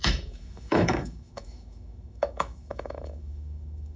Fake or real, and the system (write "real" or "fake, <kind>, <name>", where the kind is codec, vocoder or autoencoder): fake, autoencoder, DAC-VAE